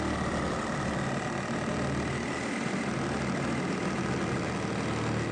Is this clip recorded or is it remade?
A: recorded